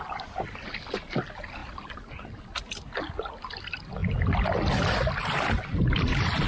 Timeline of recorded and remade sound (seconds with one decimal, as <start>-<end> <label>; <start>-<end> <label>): 0.0-6.5 recorded